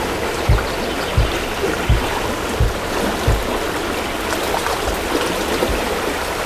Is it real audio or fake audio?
real